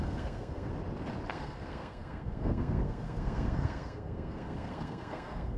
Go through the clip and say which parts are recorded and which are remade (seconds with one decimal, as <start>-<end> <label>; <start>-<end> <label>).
0.0-0.7 remade; 0.7-1.3 recorded; 1.3-5.6 remade